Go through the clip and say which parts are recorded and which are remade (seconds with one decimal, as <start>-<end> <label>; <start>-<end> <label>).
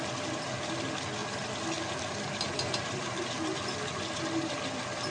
0.0-5.1 recorded